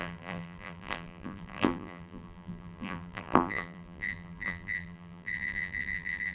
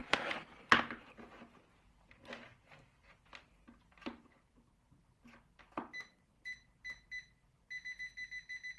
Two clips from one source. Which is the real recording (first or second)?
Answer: second